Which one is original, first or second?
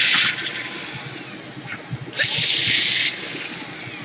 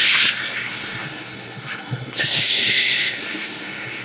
first